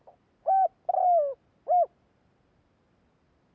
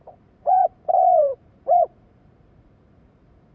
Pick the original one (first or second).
first